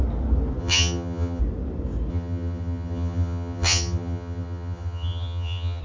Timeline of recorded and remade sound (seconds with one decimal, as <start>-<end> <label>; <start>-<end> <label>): 0.0-0.6 recorded; 0.6-1.4 remade; 1.4-2.1 recorded; 2.1-5.8 remade